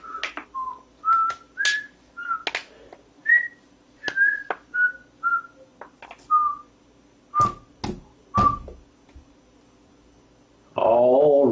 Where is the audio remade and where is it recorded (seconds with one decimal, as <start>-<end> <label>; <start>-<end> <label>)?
0.0-11.5 recorded